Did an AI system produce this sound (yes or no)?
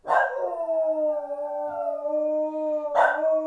no